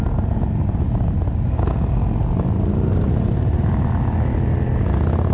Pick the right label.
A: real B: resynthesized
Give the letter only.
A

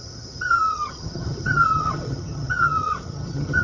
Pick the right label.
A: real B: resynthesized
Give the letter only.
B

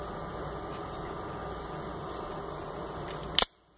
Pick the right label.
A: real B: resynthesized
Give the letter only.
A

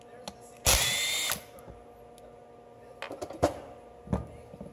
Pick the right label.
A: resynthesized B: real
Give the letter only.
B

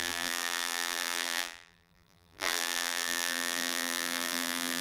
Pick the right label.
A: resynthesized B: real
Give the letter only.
A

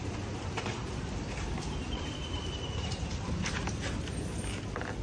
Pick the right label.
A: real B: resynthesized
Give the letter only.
A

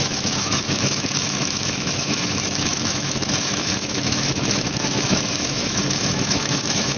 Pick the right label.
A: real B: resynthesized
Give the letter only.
B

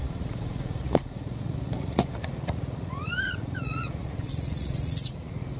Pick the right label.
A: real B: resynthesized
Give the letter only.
B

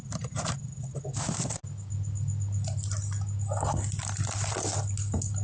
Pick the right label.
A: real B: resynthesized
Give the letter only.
A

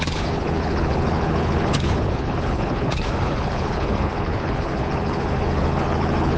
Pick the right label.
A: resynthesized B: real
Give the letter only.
A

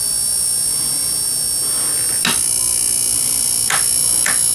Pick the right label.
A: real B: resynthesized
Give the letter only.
A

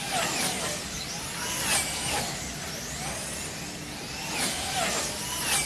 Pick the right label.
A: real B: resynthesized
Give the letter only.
A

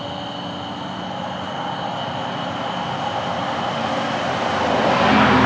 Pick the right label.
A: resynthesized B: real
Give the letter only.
B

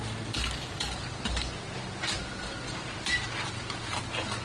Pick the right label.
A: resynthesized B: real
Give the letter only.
A